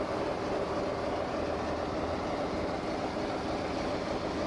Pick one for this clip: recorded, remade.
recorded